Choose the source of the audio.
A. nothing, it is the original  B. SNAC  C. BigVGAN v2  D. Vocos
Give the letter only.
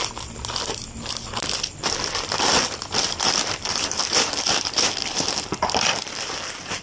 C